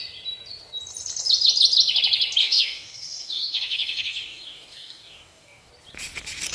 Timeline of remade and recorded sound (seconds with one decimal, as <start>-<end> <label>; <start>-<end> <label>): 0.0-2.4 recorded; 2.4-5.7 remade; 5.7-6.5 recorded